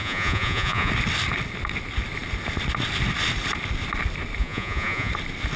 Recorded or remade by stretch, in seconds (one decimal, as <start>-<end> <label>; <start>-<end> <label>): 0.0-0.9 remade; 0.9-4.4 recorded; 4.4-5.1 remade; 5.1-5.6 recorded